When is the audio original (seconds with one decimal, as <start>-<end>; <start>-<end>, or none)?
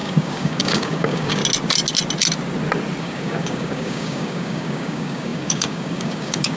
1.4-3.0